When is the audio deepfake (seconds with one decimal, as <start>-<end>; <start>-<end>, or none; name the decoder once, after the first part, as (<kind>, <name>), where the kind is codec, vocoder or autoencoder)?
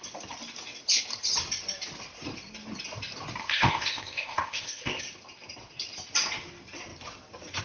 3.4-5.0 (codec, ZipCodec)